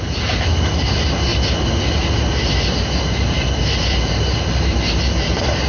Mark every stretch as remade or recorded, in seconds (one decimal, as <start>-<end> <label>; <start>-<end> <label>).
0.0-5.7 recorded